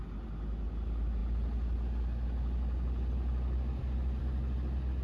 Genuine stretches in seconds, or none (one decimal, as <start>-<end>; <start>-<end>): 0.0-5.0